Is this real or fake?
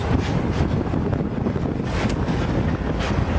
real